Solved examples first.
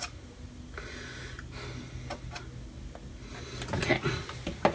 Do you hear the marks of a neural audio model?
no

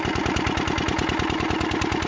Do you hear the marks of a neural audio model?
no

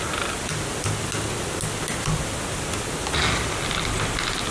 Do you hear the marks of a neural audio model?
no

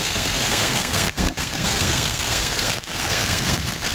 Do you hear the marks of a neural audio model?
yes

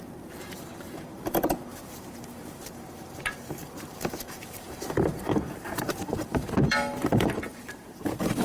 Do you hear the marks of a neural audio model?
yes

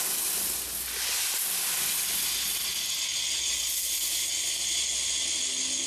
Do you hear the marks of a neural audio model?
no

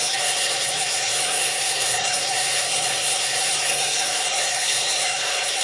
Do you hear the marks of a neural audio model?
yes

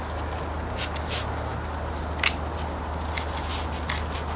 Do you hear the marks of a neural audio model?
no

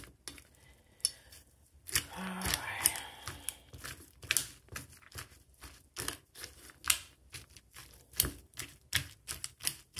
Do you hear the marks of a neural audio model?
no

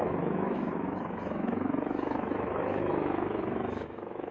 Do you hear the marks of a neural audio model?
yes